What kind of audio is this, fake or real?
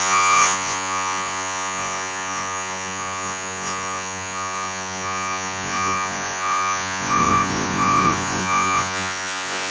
fake